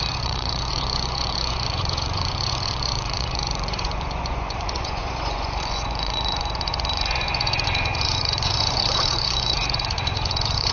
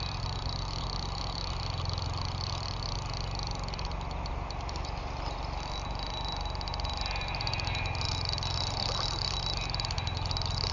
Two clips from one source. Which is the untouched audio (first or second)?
second